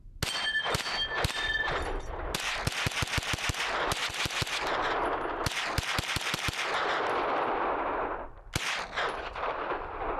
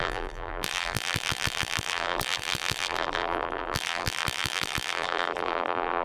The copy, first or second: second